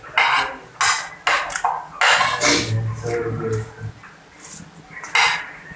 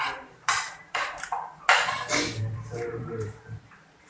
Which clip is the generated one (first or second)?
second